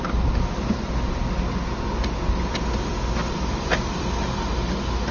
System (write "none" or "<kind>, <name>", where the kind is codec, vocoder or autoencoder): none